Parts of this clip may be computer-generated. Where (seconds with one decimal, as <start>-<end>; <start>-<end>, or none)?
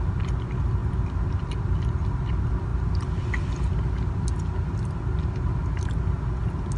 none